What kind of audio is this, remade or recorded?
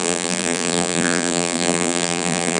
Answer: remade